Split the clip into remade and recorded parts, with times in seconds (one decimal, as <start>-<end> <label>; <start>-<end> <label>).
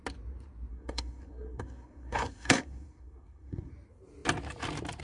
0.0-0.7 recorded; 0.7-3.7 remade; 3.7-5.0 recorded